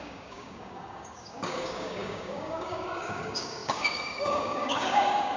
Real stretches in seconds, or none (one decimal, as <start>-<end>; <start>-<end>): none